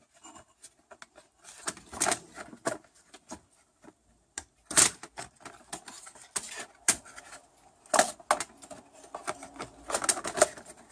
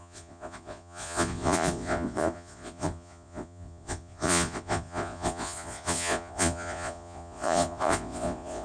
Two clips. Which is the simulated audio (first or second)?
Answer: second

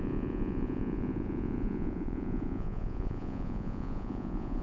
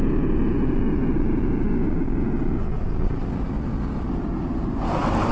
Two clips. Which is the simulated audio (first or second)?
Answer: first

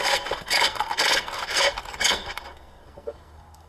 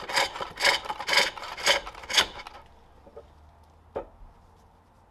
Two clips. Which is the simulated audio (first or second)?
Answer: first